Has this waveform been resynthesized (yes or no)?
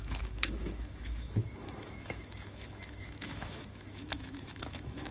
yes